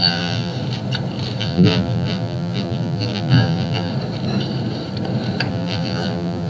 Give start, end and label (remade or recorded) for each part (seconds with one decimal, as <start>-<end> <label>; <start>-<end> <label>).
0.0-0.5 remade; 0.5-1.4 recorded; 1.4-3.9 remade; 3.9-5.5 recorded; 5.5-6.5 remade